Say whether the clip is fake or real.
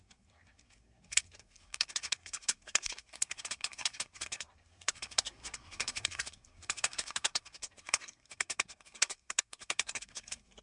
fake